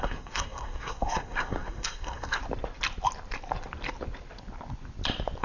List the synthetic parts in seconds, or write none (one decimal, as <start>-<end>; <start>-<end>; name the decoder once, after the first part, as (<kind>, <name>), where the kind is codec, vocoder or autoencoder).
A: 0.0-2.4 (codec, SNAC)